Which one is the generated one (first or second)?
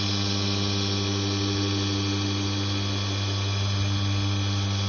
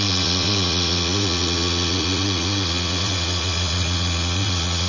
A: second